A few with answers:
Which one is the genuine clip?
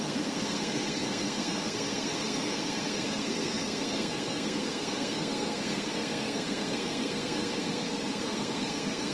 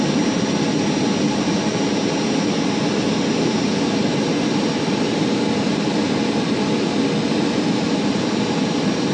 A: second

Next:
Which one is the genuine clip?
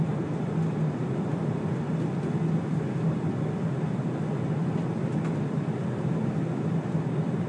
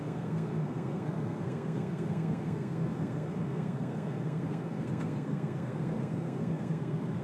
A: first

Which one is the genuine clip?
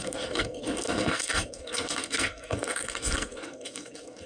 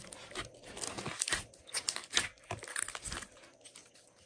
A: second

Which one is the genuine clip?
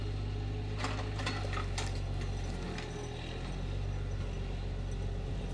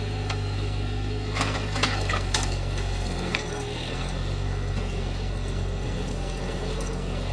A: first